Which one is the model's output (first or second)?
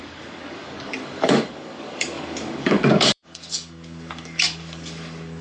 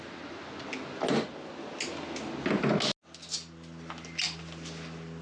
first